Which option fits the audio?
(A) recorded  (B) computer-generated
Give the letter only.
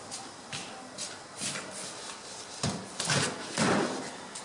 A